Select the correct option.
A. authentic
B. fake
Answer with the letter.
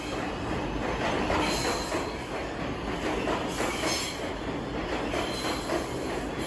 A